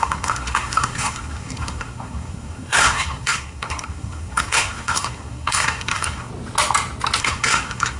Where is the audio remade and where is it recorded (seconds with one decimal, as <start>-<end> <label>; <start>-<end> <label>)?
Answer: 0.0-6.3 remade; 6.3-7.2 recorded; 7.2-8.0 remade